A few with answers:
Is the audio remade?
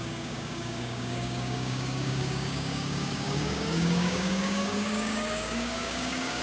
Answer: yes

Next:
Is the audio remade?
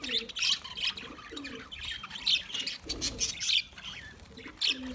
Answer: no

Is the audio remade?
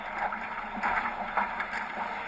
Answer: no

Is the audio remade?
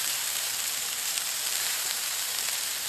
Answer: yes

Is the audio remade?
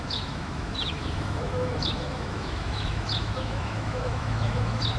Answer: yes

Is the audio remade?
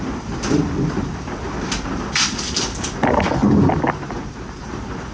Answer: no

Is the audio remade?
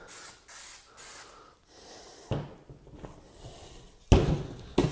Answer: no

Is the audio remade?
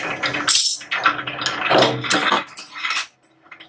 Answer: no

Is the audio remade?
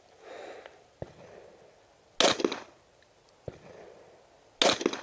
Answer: no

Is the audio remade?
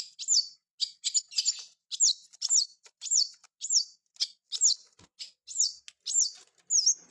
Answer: no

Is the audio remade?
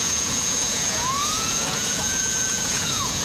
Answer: yes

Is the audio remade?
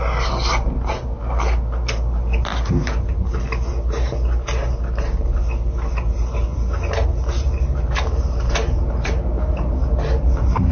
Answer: no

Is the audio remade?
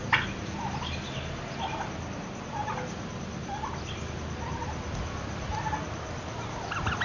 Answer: no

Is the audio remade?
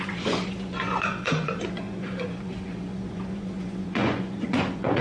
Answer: yes